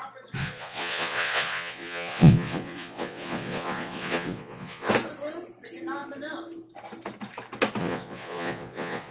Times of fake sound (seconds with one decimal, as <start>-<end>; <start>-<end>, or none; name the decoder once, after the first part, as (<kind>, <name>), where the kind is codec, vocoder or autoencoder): 0.4-4.9 (vocoder, Vocos); 7.8-9.1